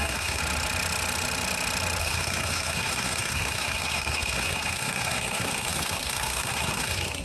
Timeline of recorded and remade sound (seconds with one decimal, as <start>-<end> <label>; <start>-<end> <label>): 0.0-0.4 remade; 0.4-2.0 recorded; 2.0-7.2 remade

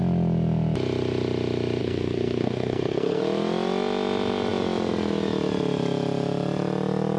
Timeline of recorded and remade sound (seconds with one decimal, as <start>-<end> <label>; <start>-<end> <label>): 0.0-1.8 recorded; 1.8-3.2 remade; 3.2-7.2 recorded

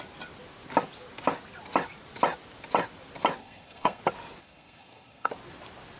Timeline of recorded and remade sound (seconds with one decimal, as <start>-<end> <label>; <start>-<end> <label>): 0.0-3.4 recorded; 3.4-4.0 remade; 4.0-4.4 recorded; 4.4-5.3 remade; 5.3-6.0 recorded

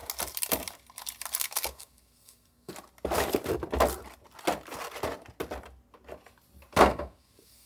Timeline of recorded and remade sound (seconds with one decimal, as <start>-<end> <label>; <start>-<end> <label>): 0.0-1.4 recorded; 1.4-2.7 remade; 2.7-6.8 recorded; 6.8-7.7 remade